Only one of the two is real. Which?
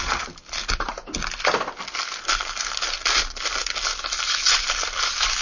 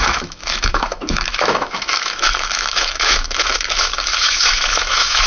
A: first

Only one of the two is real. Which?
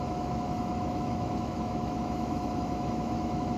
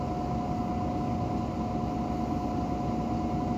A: second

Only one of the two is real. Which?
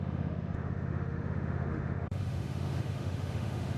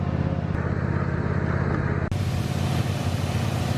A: second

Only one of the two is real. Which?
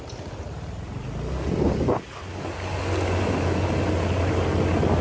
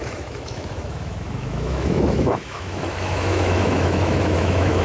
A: first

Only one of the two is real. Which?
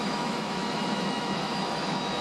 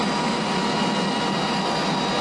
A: second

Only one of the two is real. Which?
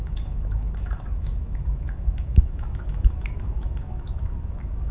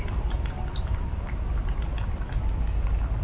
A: second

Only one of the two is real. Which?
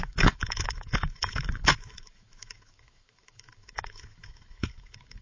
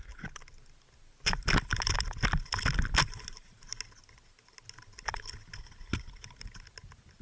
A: second